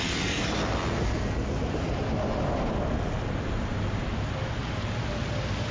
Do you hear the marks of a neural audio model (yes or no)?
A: no